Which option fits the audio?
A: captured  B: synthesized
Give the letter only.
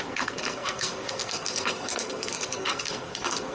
B